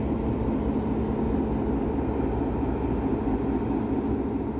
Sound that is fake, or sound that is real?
real